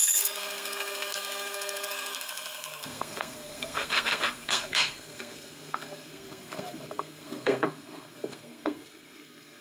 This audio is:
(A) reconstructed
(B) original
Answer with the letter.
A